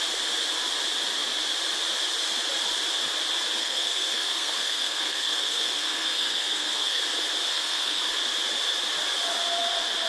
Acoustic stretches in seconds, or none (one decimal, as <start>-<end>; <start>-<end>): 0.0-3.6; 7.0-7.5; 8.0-10.1